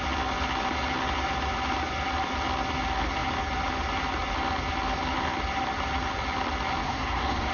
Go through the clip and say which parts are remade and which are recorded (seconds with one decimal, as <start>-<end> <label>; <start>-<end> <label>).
0.0-6.8 recorded; 6.8-7.5 remade